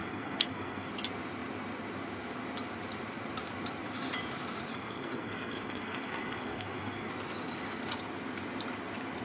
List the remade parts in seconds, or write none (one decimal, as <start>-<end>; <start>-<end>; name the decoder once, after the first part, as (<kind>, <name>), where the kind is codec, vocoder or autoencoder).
0.0-0.9 (codec, SNAC); 4.7-7.1